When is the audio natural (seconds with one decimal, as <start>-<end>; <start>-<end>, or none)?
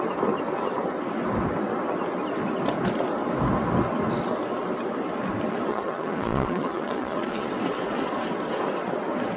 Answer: 0.0-5.7; 7.5-9.4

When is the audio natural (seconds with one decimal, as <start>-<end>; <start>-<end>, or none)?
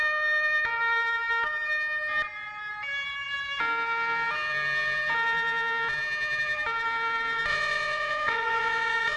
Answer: 0.0-7.5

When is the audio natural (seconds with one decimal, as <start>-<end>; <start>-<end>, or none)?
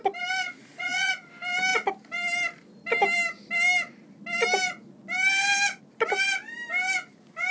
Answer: 0.0-0.6; 1.1-7.5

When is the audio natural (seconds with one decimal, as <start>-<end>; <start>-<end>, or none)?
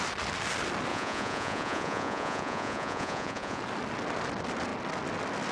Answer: 0.0-0.9; 3.6-5.5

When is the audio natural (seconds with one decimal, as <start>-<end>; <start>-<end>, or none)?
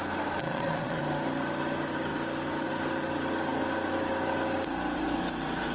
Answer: 0.0-0.4; 1.0-5.7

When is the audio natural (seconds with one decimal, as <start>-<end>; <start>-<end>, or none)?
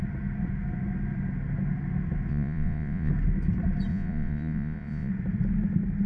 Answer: 0.0-2.3; 3.1-3.9; 5.1-6.1